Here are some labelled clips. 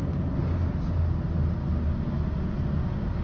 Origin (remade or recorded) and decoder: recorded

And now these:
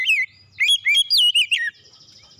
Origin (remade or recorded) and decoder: recorded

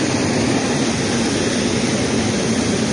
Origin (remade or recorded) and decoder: recorded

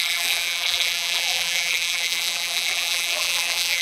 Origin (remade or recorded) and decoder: remade, vocoder, BigVGAN v2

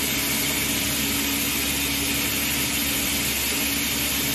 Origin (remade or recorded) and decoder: recorded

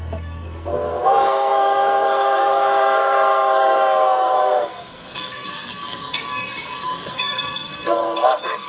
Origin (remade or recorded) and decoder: remade, codec, SNAC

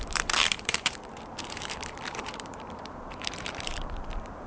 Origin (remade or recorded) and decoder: remade, vocoder, BigVGAN v2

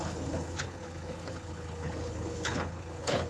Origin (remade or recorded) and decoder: remade, codec, HILCodec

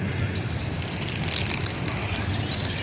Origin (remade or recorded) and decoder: recorded